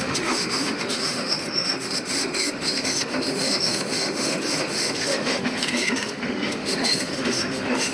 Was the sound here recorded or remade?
remade